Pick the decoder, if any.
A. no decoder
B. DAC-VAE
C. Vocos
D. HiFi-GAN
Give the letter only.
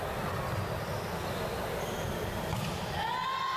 A